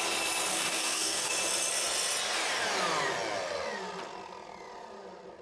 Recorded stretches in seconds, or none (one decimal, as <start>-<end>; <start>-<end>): 0.0-0.5; 1.3-5.4